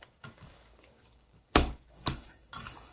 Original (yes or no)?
no